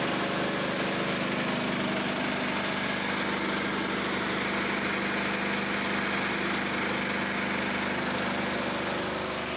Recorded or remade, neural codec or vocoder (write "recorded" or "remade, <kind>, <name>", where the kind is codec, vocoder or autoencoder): recorded